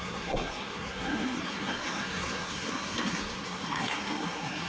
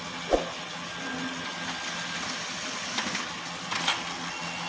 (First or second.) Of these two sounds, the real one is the second